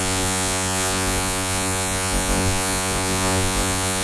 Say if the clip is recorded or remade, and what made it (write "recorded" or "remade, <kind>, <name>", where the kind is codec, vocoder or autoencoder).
remade, vocoder, Vocos